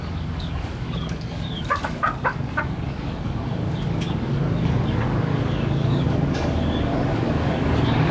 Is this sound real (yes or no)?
no